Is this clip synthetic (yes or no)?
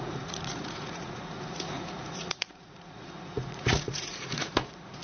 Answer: yes